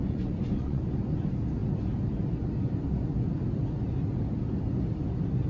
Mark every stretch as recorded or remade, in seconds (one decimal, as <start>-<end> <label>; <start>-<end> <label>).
0.0-0.8 remade; 0.8-5.5 recorded